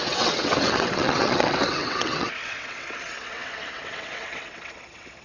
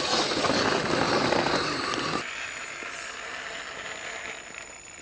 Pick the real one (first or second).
second